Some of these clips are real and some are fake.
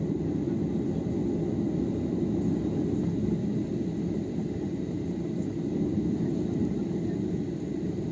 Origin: real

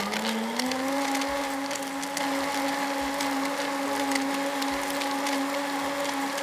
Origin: real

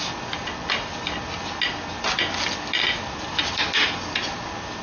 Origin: real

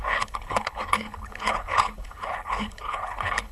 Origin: fake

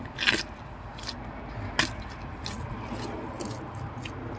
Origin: real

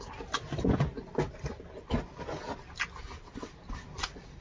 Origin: real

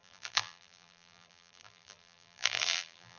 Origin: fake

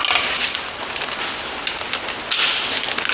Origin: real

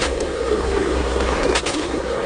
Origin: fake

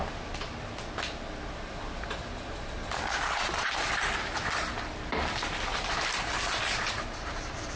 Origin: real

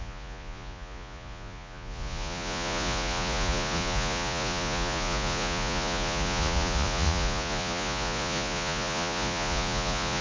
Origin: fake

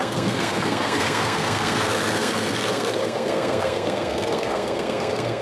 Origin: fake